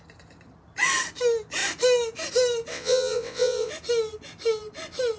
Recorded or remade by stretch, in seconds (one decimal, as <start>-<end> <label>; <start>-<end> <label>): 0.0-2.7 recorded; 2.7-3.7 remade; 3.7-5.2 recorded

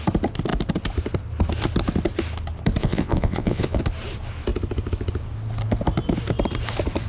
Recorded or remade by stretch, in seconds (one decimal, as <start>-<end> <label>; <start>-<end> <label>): 0.0-2.8 recorded; 2.8-3.8 remade; 3.8-7.1 recorded